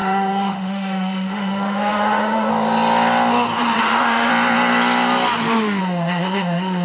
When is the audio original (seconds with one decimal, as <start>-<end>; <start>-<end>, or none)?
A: 2.5-3.8; 4.3-5.8